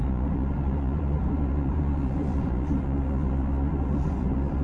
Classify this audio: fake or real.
fake